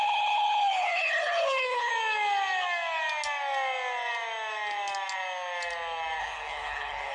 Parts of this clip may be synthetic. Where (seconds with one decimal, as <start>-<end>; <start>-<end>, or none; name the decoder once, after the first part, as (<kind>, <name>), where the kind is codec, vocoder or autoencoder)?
0.0-1.9 (codec, HILCodec); 6.2-7.1